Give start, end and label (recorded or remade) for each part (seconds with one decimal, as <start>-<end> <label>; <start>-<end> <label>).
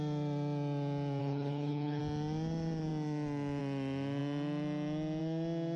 0.0-1.2 recorded; 1.2-2.0 remade; 2.0-5.8 recorded